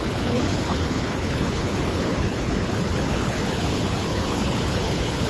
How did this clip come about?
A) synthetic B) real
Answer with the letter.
A